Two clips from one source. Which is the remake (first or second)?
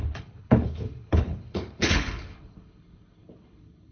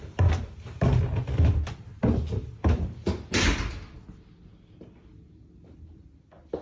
first